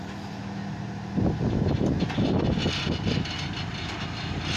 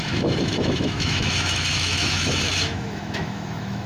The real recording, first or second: first